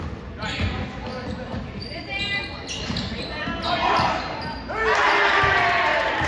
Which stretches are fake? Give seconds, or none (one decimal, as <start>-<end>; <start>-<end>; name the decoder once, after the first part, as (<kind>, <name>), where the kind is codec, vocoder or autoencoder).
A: none